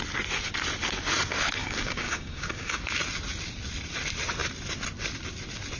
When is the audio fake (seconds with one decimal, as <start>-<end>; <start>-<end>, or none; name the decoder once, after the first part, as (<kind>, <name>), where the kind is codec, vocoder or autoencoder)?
1.6-2.7 (codec, DAC)